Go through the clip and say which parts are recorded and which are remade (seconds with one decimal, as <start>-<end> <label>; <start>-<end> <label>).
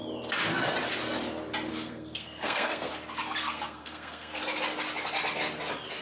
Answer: 0.0-1.7 recorded; 1.7-2.9 remade; 2.9-3.4 recorded; 3.4-4.4 remade; 4.4-6.0 recorded